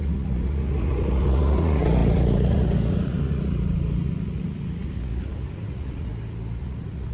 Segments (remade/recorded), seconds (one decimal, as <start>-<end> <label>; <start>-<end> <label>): 0.0-6.1 remade; 6.1-6.6 recorded; 6.6-7.1 remade